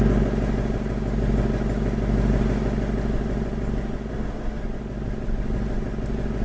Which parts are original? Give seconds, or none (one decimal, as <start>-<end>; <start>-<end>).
0.0-4.1; 4.6-6.4